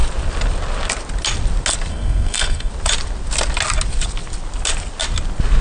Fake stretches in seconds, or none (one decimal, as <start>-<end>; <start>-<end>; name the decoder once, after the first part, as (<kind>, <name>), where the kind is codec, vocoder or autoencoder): 1.9-2.7 (codec, SNAC)